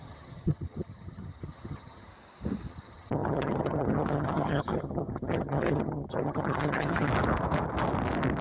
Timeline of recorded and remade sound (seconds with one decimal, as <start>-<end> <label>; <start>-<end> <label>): 0.0-2.1 remade; 2.1-2.7 recorded; 2.7-7.1 remade; 7.1-8.4 recorded